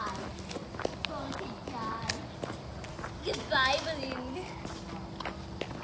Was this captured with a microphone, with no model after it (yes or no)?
yes